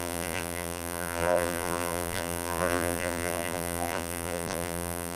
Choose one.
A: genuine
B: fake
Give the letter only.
B